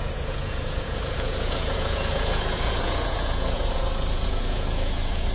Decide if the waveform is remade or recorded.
remade